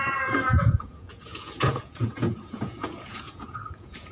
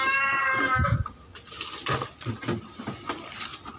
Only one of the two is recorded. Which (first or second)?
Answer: second